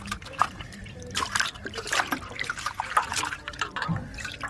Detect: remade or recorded remade